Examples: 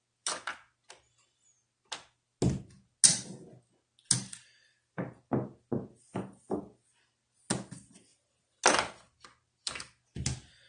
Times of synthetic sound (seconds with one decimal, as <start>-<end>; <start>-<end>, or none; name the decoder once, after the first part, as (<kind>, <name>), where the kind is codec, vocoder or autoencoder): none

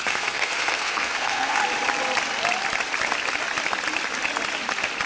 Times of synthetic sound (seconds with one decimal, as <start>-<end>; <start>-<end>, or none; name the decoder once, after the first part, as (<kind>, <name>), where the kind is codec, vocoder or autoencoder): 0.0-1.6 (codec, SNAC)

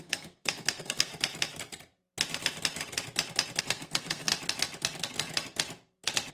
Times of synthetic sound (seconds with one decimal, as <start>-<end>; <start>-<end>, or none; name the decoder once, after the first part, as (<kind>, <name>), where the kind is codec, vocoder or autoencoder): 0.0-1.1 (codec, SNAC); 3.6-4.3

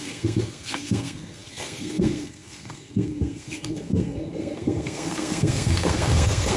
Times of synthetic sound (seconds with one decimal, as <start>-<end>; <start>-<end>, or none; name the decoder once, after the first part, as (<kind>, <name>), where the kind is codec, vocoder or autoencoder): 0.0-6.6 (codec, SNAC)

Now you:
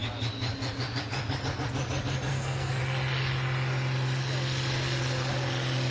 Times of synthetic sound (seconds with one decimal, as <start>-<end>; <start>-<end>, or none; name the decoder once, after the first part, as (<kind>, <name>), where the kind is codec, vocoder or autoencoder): 2.3-2.8 (codec, SNAC)

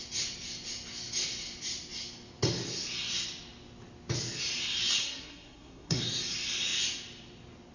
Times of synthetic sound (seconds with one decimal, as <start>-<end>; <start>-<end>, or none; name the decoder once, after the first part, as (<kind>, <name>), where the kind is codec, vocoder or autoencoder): 5.0-6.0 (codec, SNAC)